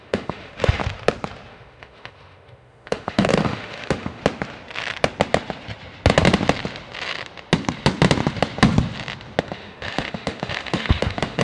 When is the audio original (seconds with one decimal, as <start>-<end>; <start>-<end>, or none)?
0.8-1.5; 4.2-9.4

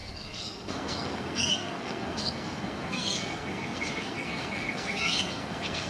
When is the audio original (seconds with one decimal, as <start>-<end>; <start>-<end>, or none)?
none

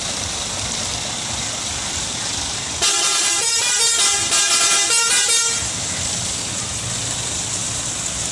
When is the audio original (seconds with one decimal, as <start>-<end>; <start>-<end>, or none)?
0.0-2.9; 3.8-8.3

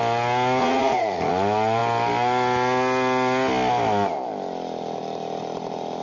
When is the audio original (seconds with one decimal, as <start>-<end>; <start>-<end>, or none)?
0.0-0.6; 1.3-6.0